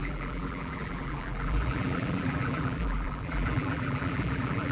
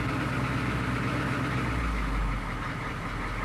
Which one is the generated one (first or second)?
first